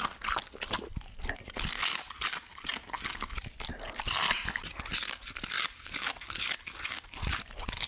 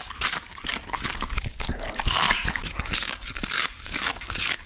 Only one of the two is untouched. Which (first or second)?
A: first